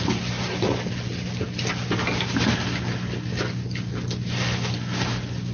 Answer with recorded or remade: recorded